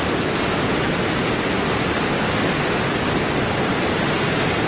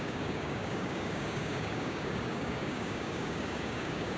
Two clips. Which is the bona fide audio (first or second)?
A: first